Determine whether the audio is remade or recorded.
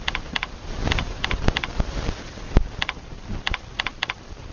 remade